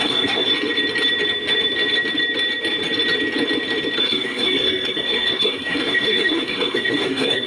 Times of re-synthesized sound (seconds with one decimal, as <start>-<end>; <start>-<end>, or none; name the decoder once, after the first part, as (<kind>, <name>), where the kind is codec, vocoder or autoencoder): 0.0-0.5 (codec, SNAC); 4.0-7.5